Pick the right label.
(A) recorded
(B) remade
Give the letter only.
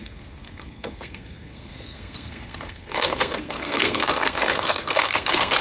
B